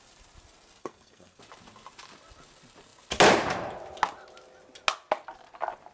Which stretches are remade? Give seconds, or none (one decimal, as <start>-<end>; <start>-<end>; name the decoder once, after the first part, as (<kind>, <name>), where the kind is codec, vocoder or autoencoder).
0.8-1.4 (codec, SNAC)